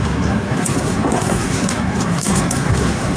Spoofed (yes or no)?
yes